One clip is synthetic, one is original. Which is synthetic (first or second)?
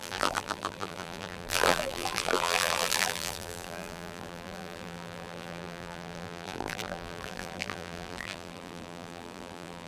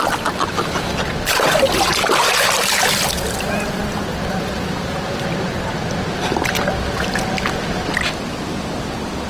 first